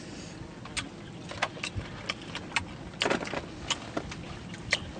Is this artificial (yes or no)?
no